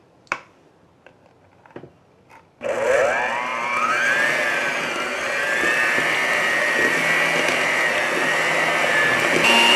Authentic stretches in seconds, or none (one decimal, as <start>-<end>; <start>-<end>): 0.0-9.8